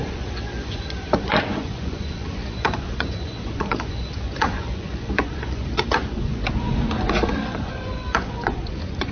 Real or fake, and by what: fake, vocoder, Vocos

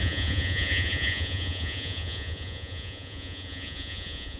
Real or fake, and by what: fake, vocoder, Vocos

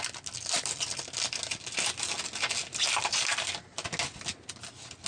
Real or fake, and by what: real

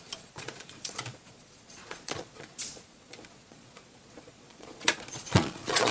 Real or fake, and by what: fake, vocoder, Vocos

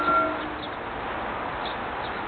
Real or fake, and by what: real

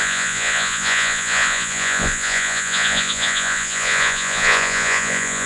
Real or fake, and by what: fake, vocoder, Vocos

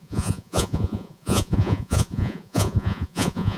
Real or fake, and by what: fake, vocoder, Vocos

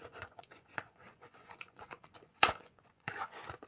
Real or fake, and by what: fake, vocoder, Vocos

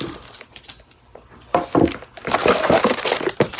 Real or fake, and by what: real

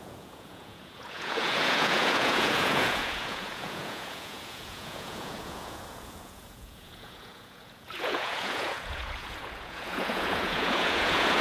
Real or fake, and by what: fake, vocoder, Vocos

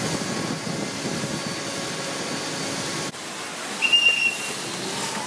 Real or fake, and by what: real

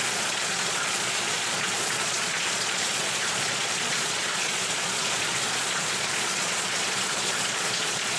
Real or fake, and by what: fake, vocoder, Vocos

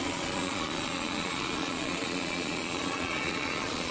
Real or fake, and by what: fake, vocoder, Vocos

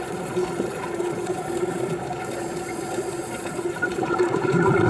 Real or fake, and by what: fake, vocoder, Vocos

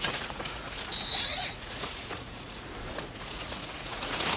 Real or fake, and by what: fake, vocoder, Vocos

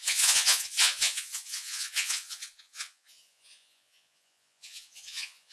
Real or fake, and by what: fake, vocoder, Vocos